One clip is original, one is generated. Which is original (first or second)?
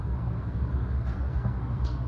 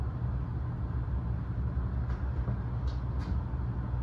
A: second